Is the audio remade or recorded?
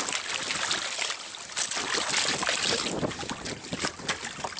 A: recorded